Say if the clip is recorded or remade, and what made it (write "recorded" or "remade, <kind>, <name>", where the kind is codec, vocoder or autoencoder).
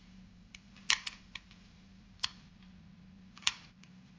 remade, vocoder, BigVGAN v2